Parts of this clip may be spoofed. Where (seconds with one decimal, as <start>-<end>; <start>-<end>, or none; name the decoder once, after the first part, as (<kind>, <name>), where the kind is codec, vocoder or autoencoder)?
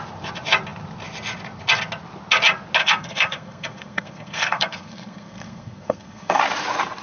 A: 2.8-6.4 (codec, SNAC)